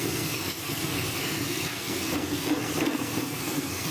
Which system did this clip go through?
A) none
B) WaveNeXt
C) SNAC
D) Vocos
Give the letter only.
C